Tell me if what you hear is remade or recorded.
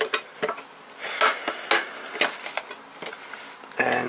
recorded